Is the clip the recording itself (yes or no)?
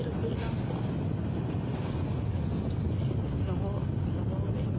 yes